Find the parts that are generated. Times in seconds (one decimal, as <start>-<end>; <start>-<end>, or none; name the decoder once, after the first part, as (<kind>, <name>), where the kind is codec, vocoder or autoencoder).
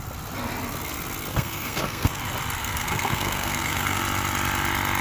1.3-2.2 (codec, SNAC); 2.6-4.0